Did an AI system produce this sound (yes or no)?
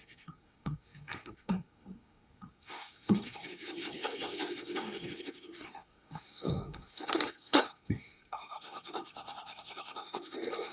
yes